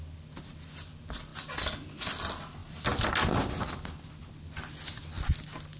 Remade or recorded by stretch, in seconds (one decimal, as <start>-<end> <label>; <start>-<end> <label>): 0.0-5.8 recorded